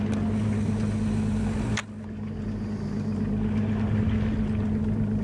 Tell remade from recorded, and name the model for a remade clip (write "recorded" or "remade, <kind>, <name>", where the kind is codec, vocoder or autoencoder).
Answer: recorded